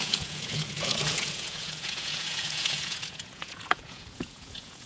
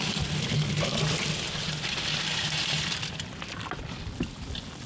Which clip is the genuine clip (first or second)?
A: second